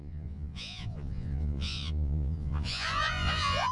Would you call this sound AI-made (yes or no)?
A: yes